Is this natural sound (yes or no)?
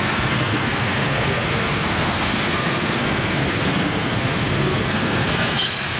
no